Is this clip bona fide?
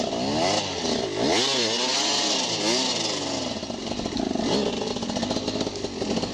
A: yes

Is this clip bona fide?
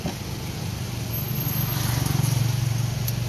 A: yes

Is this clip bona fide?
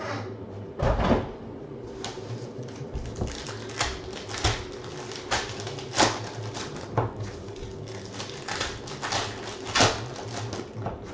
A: yes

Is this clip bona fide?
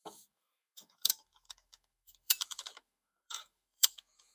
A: no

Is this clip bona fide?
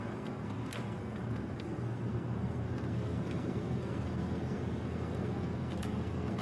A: no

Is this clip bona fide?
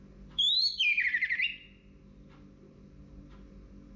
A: yes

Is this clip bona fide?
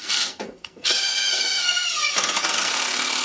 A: no